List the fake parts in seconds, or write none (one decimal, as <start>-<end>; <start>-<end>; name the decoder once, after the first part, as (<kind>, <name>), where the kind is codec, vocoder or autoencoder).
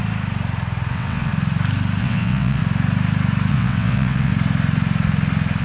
0.9-1.3 (vocoder, WaveNeXt); 2.0-2.6; 3.5-4.3